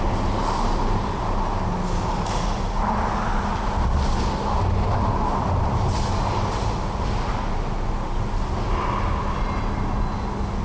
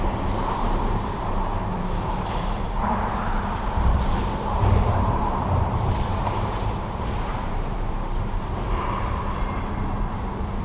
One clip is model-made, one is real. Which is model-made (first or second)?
second